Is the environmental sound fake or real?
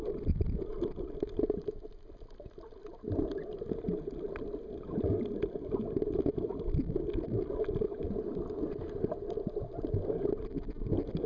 real